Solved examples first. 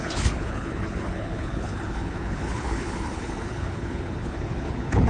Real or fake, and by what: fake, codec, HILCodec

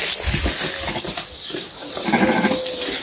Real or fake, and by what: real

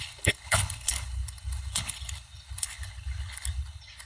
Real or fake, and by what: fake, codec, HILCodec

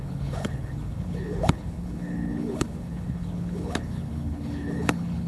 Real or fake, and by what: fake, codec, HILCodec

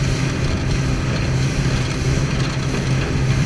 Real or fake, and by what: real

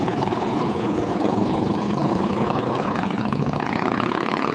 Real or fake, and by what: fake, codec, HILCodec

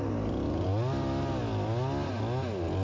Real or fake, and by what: real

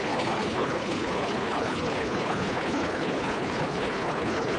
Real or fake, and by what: fake, codec, HILCodec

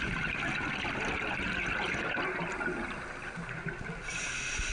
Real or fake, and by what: real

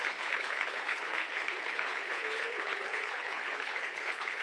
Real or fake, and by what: fake, codec, HILCodec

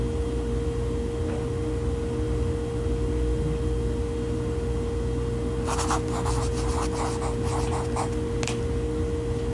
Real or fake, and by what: real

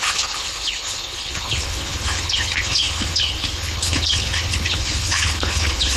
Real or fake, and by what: fake, codec, HILCodec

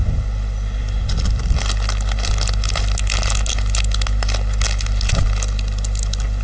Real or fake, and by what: real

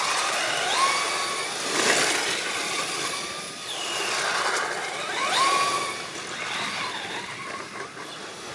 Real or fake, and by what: real